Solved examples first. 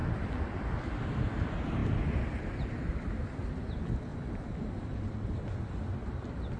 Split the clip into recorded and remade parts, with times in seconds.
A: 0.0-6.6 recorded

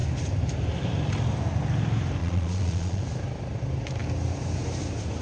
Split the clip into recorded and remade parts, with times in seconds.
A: 0.0-2.2 recorded; 2.2-3.0 remade; 3.0-5.2 recorded

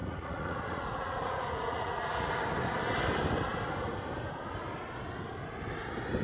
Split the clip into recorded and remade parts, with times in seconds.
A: 0.0-2.3 remade; 2.3-6.2 recorded

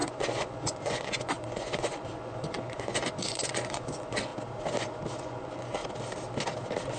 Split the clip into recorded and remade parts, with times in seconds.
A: 0.0-4.3 remade; 4.3-5.2 recorded; 5.2-5.8 remade; 5.8-7.0 recorded

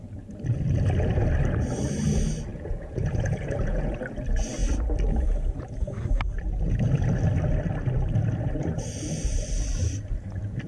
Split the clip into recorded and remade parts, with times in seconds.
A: 0.0-2.5 recorded; 2.5-4.0 remade; 4.0-10.7 recorded